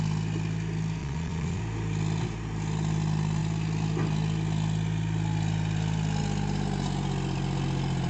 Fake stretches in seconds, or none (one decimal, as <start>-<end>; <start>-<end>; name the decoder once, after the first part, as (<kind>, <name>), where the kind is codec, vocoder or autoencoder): 1.0-1.6 (vocoder, Vocos)